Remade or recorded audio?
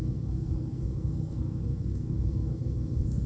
remade